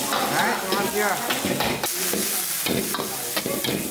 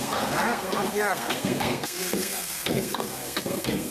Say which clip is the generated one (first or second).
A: second